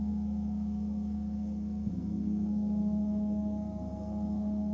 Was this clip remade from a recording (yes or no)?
yes